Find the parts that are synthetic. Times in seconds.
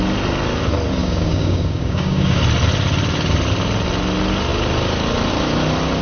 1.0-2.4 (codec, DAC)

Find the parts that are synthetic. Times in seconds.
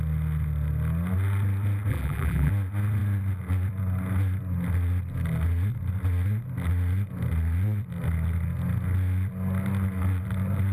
1.9-2.5 (vocoder, BigVGAN v2)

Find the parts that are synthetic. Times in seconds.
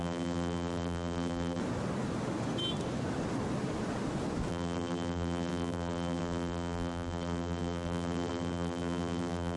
0.0-1.6 (vocoder, BigVGAN v2); 4.5-9.6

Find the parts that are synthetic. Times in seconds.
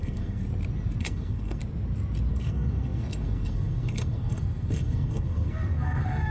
0.0-0.4 (codec, SNAC); 1.0-1.6; 2.3-6.3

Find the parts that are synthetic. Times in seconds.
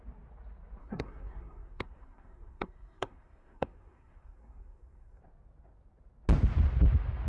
0.8-5.2 (codec, SNAC)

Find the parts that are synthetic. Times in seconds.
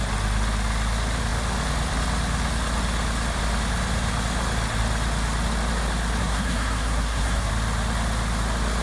6.2-7.5 (codec, SNAC)